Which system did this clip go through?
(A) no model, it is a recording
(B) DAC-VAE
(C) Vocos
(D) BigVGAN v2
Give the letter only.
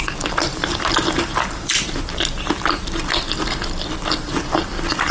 D